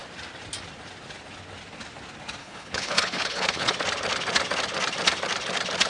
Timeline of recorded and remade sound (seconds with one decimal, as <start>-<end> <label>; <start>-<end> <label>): 0.0-2.4 recorded; 2.4-3.7 remade; 3.7-5.9 recorded